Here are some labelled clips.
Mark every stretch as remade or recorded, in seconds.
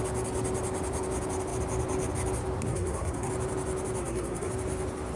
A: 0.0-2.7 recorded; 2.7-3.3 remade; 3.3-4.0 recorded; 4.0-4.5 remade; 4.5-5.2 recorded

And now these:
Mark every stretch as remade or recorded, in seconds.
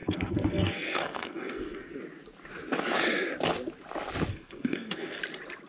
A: 0.0-2.0 remade; 2.0-4.3 recorded; 4.3-5.2 remade; 5.2-5.7 recorded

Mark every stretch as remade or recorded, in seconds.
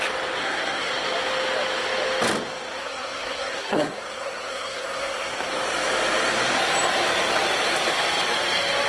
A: 0.0-0.4 recorded; 0.4-0.9 remade; 0.9-2.8 recorded; 2.8-5.5 remade; 5.5-8.9 recorded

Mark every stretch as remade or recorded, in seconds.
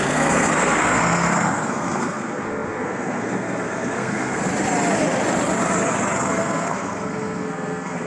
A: 0.0-4.4 remade; 4.4-6.2 recorded; 6.2-8.1 remade